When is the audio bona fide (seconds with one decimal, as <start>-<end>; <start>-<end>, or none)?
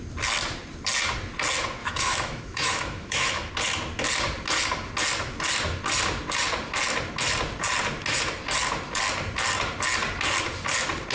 0.0-1.8; 3.5-11.1